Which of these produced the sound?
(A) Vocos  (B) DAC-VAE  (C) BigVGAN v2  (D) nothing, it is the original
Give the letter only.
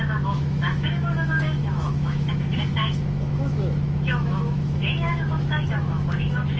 B